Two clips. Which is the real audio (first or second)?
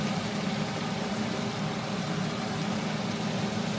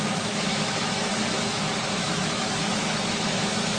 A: first